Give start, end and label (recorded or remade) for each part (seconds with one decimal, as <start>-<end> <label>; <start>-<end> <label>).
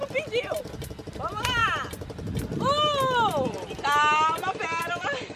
0.0-5.4 recorded